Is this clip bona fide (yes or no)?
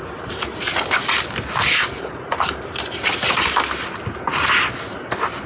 yes